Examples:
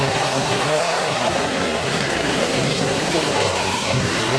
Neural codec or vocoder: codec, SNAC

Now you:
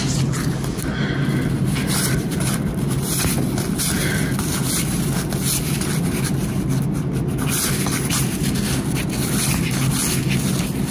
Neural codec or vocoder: none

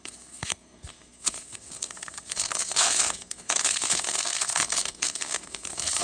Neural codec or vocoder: codec, SNAC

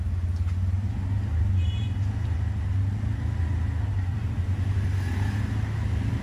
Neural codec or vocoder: none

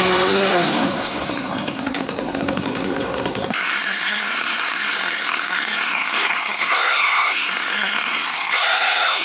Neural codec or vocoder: codec, SNAC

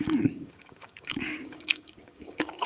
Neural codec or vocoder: codec, DAC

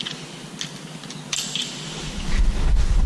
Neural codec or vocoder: none